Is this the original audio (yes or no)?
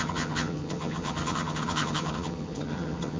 no